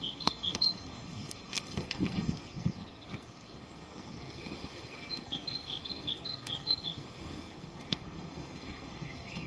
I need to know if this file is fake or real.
fake